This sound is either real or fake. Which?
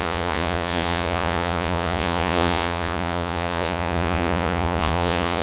fake